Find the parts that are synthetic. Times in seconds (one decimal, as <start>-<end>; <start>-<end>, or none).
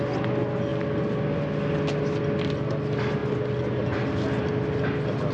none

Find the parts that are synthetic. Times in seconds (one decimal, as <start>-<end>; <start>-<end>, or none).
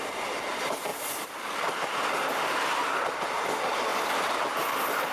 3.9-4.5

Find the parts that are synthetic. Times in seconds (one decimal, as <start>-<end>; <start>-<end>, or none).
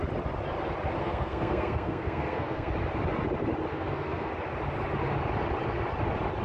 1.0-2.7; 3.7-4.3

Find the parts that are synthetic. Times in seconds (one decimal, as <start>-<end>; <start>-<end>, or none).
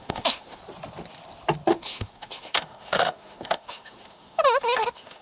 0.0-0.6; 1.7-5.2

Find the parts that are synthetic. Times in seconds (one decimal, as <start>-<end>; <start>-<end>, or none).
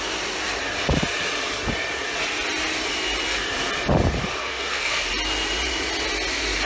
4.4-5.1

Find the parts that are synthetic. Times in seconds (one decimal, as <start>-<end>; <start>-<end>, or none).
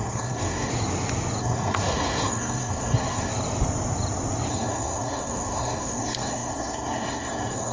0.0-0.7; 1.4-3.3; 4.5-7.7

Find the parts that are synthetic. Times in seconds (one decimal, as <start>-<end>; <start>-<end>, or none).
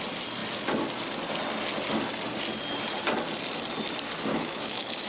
4.3-5.1